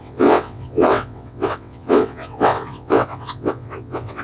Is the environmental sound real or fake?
fake